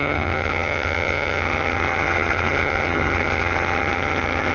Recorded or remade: remade